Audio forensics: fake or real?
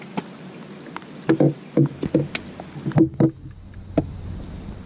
real